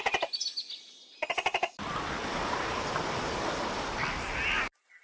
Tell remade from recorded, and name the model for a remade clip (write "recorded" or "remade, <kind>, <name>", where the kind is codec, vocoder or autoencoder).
recorded